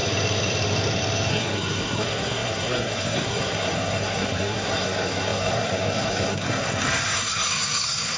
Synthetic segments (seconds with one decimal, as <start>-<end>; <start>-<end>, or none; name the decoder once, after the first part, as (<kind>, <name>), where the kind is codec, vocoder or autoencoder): 1.3-8.2 (codec, SNAC)